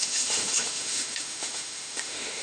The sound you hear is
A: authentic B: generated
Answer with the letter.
B